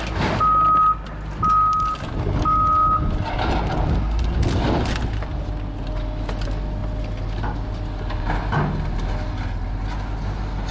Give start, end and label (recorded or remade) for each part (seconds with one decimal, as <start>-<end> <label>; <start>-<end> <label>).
0.0-10.7 recorded